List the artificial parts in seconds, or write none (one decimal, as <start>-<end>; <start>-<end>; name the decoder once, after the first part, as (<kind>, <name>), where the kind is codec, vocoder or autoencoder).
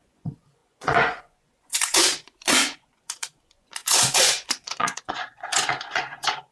0.0-6.5 (vocoder, Vocos)